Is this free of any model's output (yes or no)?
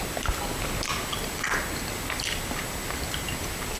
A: yes